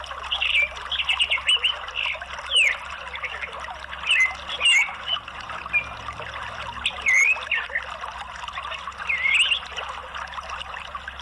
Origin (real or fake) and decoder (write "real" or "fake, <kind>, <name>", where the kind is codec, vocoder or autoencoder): real